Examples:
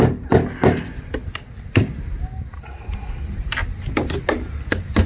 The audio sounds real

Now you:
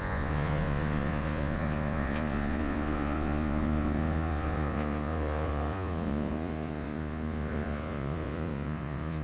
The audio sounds fake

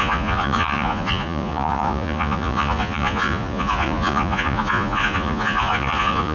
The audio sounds fake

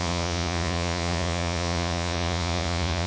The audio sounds fake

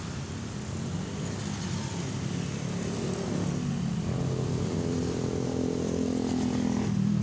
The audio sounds real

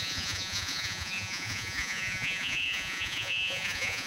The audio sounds fake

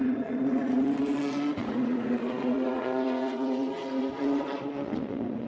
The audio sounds fake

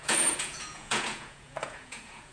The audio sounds fake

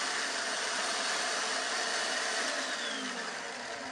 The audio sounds real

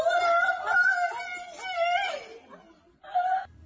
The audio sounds real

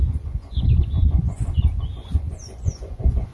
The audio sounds fake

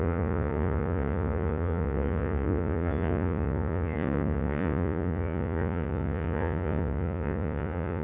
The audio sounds fake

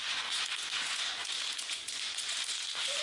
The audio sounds fake